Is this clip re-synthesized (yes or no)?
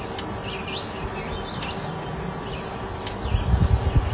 no